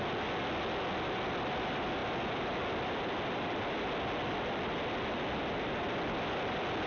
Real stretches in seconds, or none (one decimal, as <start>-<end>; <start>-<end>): 0.0-6.9